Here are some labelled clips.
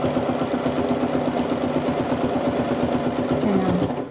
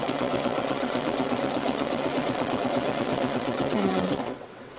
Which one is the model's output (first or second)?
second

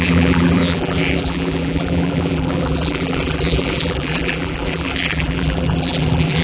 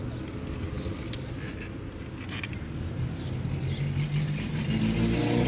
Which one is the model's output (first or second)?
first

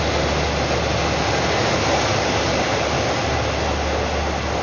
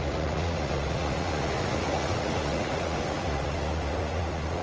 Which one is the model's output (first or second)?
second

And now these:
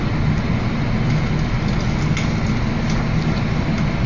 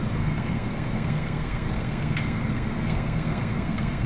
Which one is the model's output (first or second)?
second